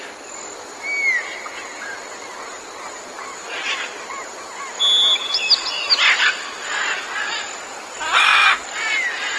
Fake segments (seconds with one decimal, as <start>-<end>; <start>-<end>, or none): none